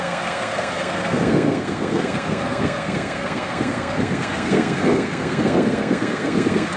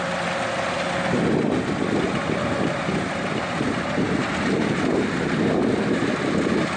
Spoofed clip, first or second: first